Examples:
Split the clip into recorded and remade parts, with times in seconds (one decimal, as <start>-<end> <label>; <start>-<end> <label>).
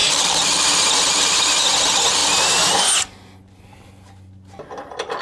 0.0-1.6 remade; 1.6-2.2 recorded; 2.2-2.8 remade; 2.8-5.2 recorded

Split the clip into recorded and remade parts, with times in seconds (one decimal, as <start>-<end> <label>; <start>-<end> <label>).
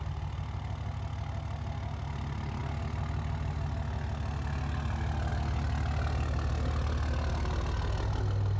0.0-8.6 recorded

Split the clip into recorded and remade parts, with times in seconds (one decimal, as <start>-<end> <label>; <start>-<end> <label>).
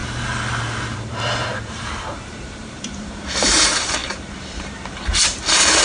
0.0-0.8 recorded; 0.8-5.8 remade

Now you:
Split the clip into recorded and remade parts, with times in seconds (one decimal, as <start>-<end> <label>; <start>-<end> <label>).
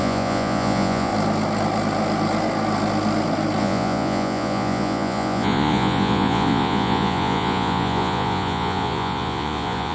0.0-1.1 remade; 1.1-3.6 recorded; 3.6-9.9 remade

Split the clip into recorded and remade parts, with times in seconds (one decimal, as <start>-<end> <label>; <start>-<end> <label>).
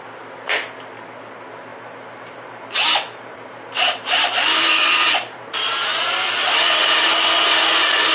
0.0-1.7 recorded; 1.7-6.0 remade; 6.0-8.1 recorded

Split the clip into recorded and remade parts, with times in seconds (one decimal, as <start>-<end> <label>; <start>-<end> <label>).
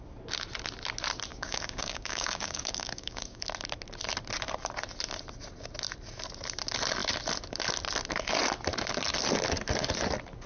0.0-1.3 recorded; 1.3-3.4 remade; 3.4-10.5 recorded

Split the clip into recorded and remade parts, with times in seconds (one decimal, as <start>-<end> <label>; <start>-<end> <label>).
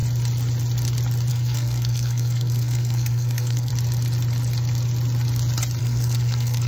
0.0-1.3 recorded; 1.3-3.7 remade; 3.7-5.8 recorded; 5.8-6.7 remade